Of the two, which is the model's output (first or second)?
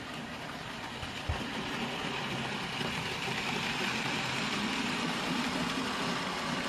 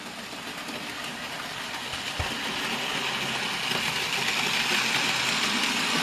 first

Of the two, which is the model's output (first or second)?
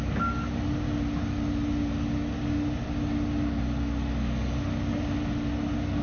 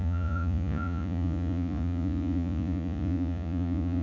second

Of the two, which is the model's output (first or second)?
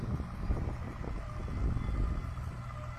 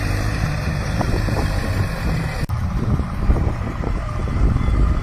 second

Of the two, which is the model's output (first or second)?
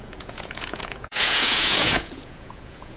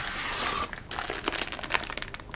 first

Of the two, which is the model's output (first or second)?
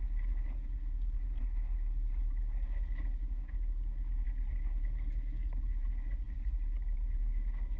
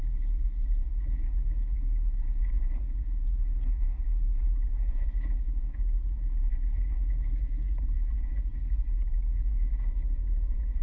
second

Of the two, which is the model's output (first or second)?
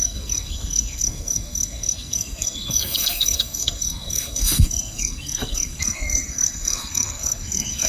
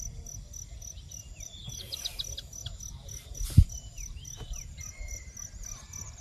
first